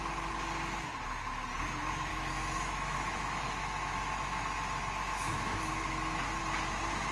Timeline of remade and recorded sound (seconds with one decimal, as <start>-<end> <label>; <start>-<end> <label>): 0.0-2.1 recorded; 2.1-6.4 remade; 6.4-7.1 recorded